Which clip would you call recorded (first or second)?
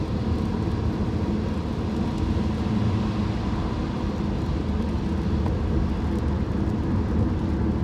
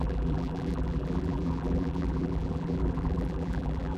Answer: first